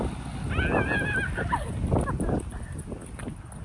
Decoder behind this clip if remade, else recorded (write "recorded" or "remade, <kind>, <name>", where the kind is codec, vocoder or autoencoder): recorded